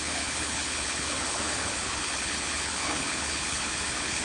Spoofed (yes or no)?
yes